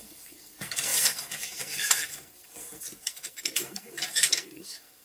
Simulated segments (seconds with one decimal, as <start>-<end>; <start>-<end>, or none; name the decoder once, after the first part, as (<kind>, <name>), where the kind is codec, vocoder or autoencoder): 0.0-5.0 (codec, SNAC)